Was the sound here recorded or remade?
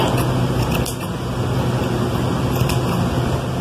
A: recorded